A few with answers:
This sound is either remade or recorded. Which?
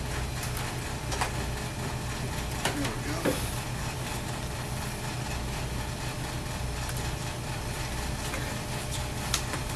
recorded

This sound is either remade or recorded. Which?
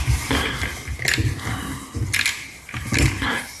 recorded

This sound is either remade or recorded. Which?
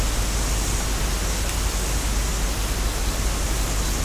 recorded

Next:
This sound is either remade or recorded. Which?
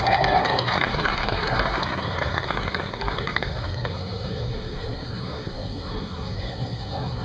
remade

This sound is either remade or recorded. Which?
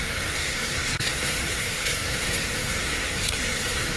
remade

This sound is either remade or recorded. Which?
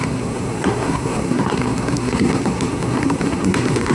remade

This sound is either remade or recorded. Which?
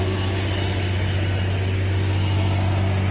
recorded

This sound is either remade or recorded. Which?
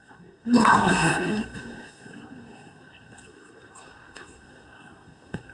remade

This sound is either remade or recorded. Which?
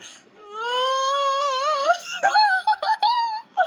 remade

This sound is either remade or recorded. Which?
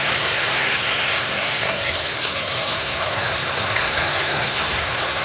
remade